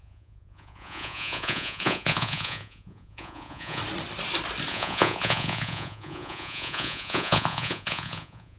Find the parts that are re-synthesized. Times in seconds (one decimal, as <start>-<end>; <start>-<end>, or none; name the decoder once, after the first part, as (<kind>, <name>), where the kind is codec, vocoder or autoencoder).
0.0-3.8 (vocoder, Vocos); 4.7-8.6